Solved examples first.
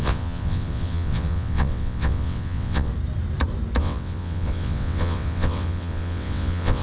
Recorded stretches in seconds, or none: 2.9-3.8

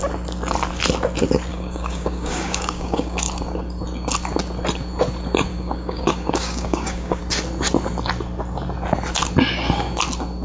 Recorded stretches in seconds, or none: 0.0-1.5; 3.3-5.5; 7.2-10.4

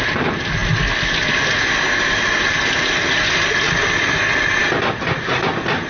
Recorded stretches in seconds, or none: 0.0-5.9